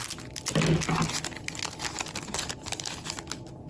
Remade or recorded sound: recorded